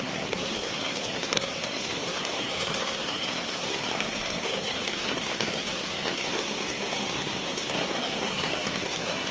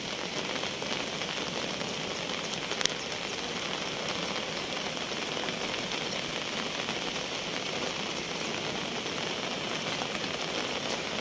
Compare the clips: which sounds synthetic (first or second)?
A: first